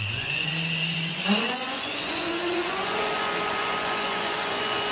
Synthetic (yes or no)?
yes